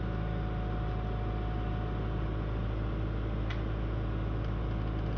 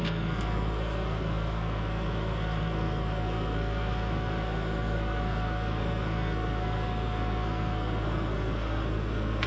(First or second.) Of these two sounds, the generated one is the second